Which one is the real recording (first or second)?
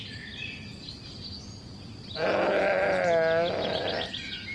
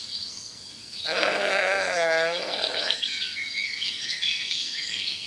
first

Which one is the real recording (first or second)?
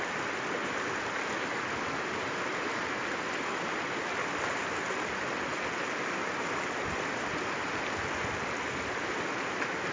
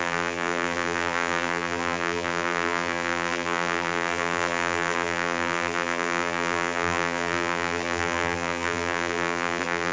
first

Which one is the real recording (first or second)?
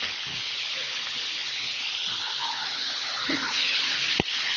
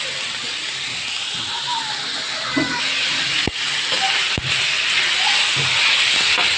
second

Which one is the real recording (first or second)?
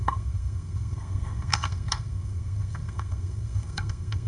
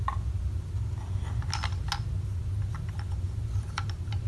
second